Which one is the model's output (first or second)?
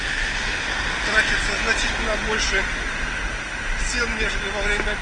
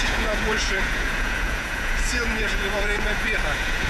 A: second